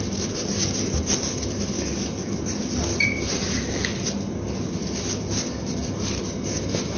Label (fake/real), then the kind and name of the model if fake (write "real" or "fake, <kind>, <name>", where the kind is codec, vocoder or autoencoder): real